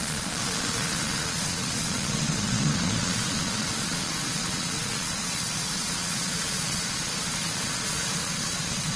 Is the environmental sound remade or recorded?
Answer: remade